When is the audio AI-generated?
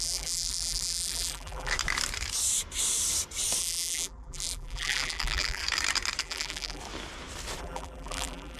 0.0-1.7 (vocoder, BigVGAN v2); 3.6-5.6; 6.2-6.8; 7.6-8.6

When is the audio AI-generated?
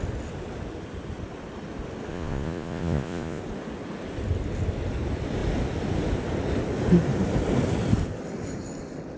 2.1-3.4 (vocoder, Vocos)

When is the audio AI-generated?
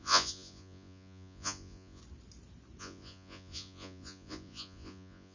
0.0-2.0 (vocoder, Vocos); 2.8-5.3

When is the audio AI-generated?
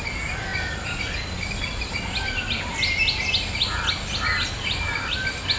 none